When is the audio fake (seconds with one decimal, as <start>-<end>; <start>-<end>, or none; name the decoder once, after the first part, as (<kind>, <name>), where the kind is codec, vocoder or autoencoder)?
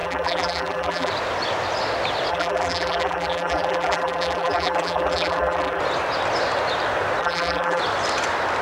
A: 0.0-1.1 (vocoder, BigVGAN v2); 2.3-5.8; 7.2-7.8